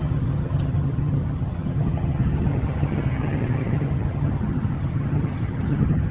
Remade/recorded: remade